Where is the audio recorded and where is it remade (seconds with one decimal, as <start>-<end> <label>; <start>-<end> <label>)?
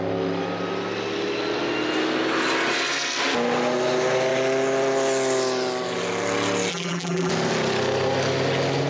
0.0-6.7 recorded; 6.7-7.3 remade; 7.3-8.9 recorded